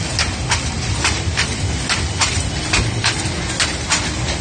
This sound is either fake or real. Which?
real